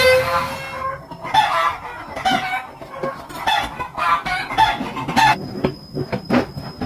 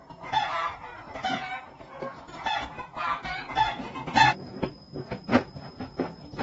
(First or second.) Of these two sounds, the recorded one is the first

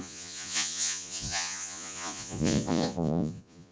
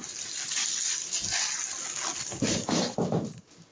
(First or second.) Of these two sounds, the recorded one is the second